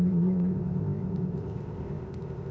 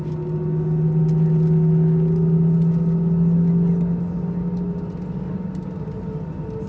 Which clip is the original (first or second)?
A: second